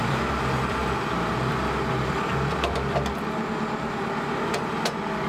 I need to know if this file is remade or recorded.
recorded